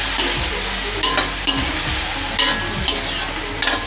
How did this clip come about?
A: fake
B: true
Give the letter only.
B